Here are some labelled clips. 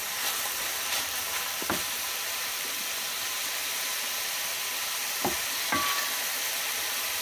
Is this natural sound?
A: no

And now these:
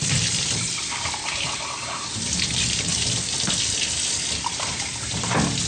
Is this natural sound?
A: no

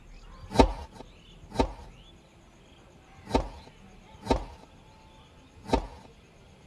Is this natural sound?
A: yes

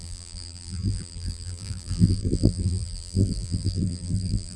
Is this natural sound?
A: no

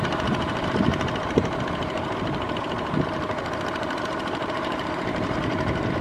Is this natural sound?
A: no